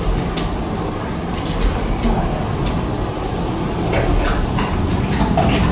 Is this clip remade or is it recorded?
recorded